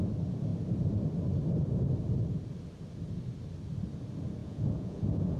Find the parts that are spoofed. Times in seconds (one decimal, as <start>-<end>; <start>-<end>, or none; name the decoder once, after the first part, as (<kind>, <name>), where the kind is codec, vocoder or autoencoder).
4.4-5.4 (vocoder, Vocos)